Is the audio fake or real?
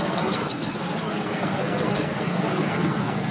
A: fake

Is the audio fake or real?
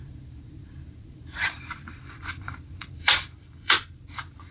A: fake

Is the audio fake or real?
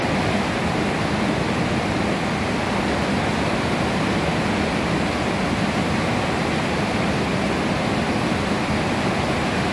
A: real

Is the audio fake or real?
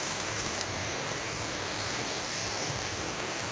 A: fake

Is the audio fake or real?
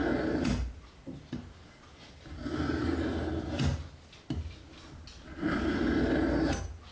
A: real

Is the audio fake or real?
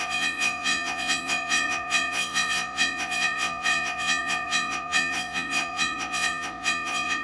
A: fake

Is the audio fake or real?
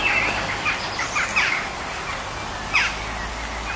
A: real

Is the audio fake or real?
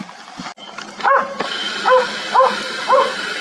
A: real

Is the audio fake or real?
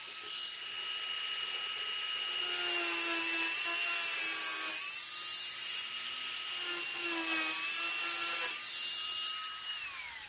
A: real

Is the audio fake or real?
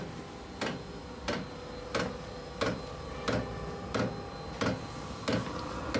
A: real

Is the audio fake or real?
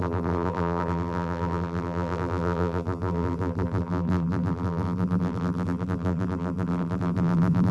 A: fake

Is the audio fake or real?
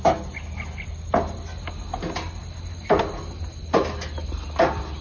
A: real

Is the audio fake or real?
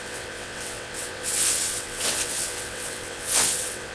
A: fake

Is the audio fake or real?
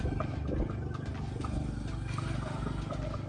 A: real